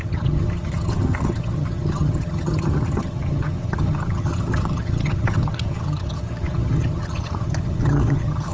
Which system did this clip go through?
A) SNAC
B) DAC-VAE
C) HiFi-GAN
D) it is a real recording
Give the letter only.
C